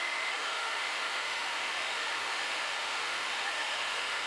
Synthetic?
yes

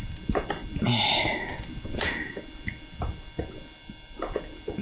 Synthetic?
no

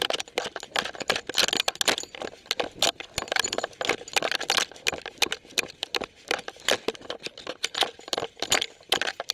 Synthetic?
no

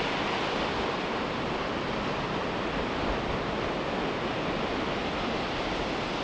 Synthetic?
no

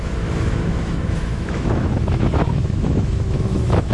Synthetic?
yes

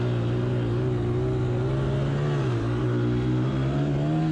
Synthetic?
no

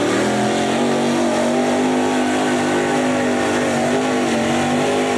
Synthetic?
no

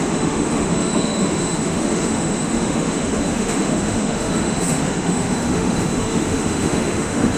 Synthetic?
yes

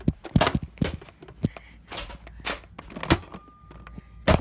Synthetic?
no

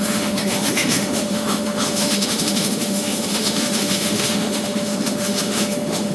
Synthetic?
yes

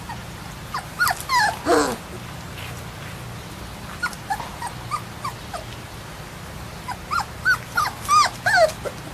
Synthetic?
no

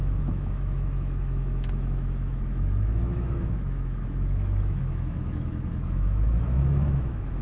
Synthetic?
yes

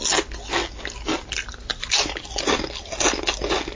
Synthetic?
no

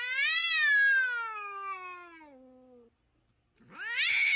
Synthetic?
no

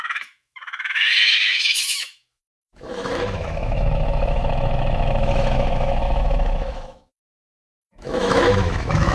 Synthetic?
yes